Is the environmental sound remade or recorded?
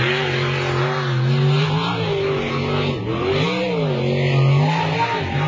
recorded